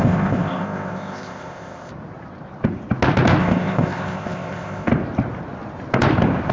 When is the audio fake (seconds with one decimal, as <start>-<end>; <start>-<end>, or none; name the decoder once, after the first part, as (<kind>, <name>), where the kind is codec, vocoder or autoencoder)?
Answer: 0.0-1.9 (codec, ZipCodec); 3.4-4.9